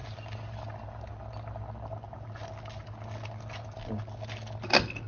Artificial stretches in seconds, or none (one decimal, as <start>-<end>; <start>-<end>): none